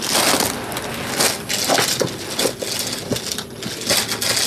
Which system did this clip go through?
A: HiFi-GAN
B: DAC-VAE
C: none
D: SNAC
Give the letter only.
C